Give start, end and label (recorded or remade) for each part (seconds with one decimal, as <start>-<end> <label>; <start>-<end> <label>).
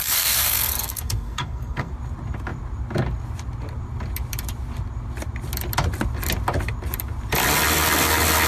0.0-1.9 remade; 1.9-8.5 recorded